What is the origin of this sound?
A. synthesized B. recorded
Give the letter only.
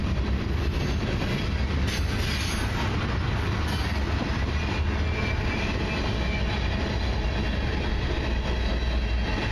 B